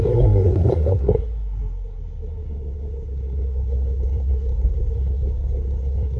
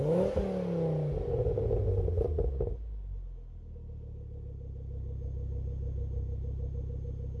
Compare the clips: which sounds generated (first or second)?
first